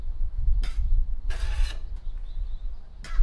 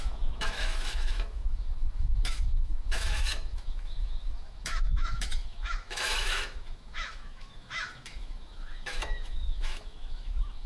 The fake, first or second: second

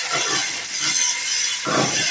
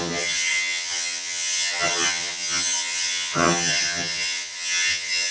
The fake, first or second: second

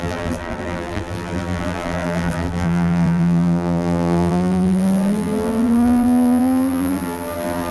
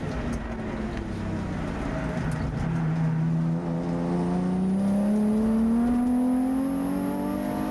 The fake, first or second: first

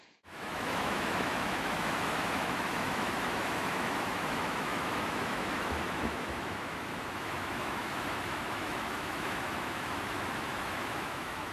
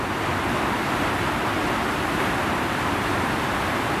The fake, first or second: first